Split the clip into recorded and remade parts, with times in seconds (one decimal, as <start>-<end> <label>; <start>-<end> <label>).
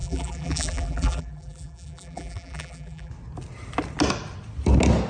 0.0-3.1 remade; 3.1-5.1 recorded